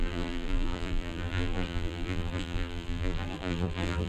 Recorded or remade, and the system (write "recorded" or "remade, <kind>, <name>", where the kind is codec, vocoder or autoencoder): remade, vocoder, BigVGAN v2